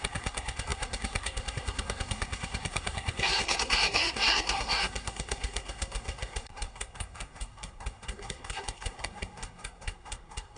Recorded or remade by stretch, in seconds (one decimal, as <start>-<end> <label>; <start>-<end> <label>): 0.0-10.6 remade